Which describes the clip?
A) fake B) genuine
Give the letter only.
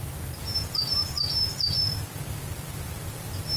B